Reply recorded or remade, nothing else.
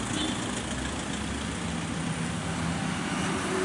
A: recorded